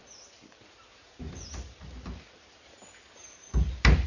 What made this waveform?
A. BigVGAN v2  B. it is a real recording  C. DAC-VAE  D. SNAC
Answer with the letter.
B